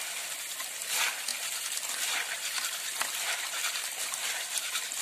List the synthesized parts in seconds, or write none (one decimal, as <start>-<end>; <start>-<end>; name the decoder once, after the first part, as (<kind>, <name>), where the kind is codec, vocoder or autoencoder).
none